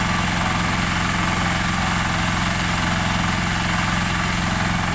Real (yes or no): yes